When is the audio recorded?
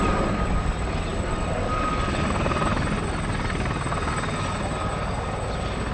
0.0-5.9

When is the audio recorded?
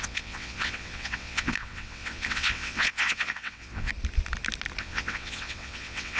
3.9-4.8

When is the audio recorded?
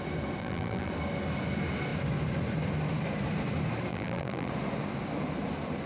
0.0-0.4; 0.9-3.9; 4.5-5.9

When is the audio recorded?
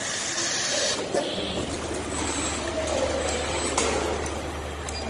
0.0-5.1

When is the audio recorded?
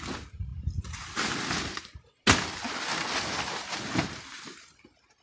0.0-5.2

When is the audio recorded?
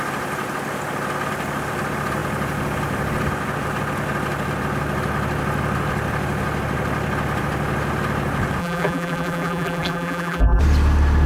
0.0-8.6; 10.6-11.3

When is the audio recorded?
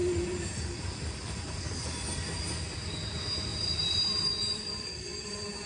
1.6-3.5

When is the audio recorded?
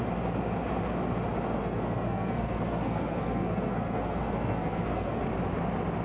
0.0-1.6; 5.2-6.0